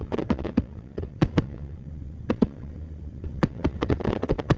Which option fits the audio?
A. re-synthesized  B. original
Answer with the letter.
A